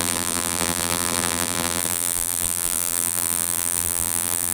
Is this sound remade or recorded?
remade